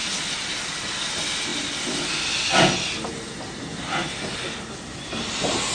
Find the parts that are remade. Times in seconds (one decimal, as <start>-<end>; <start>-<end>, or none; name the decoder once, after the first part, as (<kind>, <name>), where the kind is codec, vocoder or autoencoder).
none